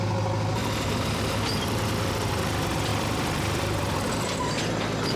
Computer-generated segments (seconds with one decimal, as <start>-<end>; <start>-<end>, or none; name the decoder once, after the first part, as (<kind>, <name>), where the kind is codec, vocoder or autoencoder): 0.6-1.9 (vocoder, BigVGAN v2); 2.9-4.7